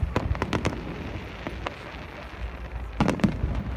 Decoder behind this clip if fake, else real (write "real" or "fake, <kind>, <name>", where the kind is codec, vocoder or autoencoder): real